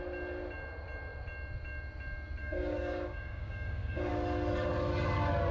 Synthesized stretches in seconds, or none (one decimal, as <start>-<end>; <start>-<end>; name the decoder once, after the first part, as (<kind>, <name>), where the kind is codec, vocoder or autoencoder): 2.4-4.1 (codec, DAC)